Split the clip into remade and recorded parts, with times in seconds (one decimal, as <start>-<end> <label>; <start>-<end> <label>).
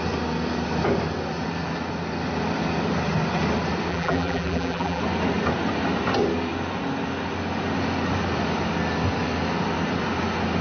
0.0-3.9 recorded; 3.9-5.0 remade; 5.0-10.6 recorded